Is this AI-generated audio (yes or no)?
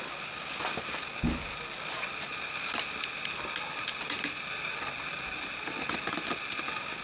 no